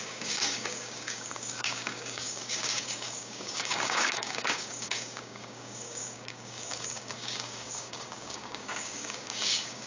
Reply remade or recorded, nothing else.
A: remade